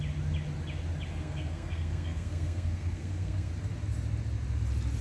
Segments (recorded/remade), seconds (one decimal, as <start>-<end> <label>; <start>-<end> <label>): 0.0-1.2 recorded; 1.2-3.5 remade; 3.5-5.0 recorded